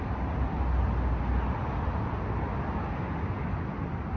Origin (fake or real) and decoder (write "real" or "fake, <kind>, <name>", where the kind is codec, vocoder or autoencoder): real